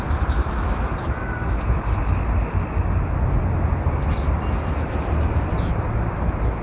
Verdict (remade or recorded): recorded